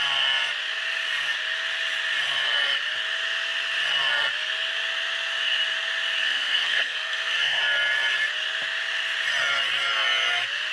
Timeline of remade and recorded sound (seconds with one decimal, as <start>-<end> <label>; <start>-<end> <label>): 0.0-6.2 recorded; 6.2-7.6 remade; 7.6-10.7 recorded